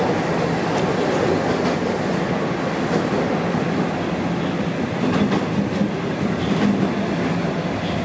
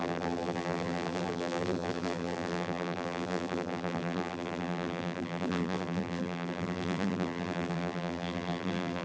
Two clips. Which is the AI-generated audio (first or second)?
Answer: second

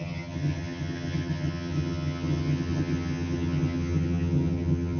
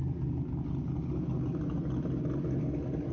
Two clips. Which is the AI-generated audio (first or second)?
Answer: first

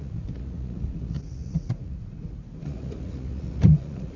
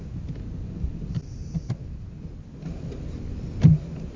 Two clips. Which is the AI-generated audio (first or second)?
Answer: first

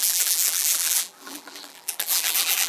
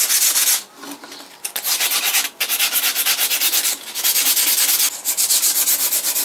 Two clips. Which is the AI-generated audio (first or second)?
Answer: first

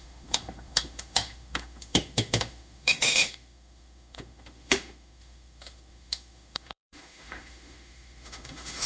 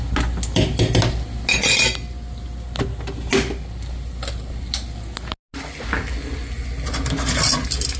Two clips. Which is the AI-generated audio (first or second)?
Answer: first